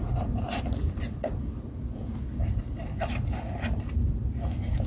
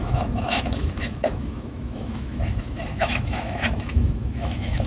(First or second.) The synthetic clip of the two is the second